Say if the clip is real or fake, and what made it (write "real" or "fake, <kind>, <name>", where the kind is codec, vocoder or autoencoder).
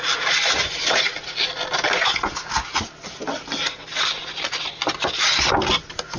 real